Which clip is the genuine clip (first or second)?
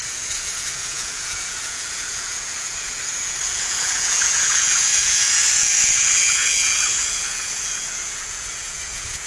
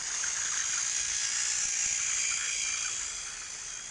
second